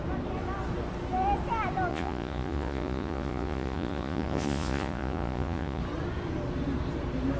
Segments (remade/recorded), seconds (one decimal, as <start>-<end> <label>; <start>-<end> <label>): 0.0-1.9 recorded; 1.9-5.8 remade; 5.8-7.4 recorded